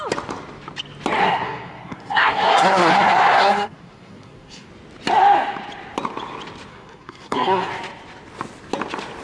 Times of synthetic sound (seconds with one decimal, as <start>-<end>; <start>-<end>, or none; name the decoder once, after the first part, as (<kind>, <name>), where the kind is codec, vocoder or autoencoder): 1.2-4.7 (codec, SNAC); 6.7-7.7